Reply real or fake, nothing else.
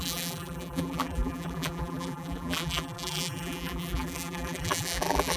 fake